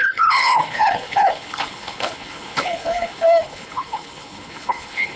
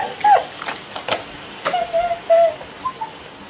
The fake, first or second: first